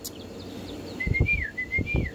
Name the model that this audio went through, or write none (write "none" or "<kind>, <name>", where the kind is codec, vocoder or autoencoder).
none